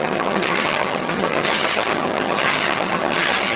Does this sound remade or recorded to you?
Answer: remade